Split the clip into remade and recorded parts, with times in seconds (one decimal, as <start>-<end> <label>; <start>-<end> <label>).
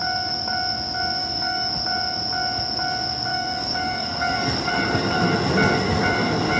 0.0-1.2 recorded; 1.2-1.7 remade; 1.7-3.3 recorded; 3.3-4.7 remade; 4.7-6.6 recorded